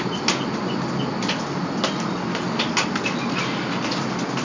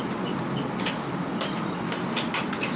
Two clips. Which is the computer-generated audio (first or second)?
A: second